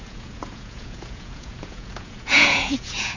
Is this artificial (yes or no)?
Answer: yes